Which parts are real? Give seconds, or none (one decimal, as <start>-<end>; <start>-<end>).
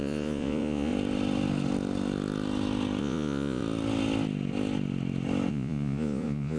0.9-3.0; 3.6-5.5